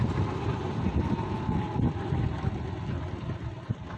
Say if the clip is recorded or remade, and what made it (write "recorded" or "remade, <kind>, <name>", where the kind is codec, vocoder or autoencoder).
recorded